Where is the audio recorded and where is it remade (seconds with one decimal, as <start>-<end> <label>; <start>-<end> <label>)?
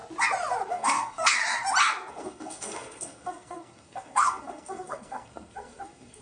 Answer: 0.0-0.7 recorded; 0.7-1.4 remade; 1.4-2.1 recorded; 2.1-6.2 remade